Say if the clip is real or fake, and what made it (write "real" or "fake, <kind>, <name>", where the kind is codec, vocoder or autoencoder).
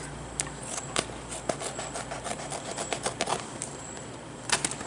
real